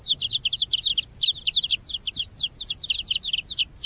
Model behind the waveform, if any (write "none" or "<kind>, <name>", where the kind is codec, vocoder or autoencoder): none